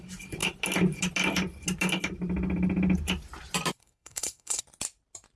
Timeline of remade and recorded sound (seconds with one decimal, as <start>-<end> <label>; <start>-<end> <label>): 0.0-3.8 recorded; 3.8-4.6 remade; 4.6-5.4 recorded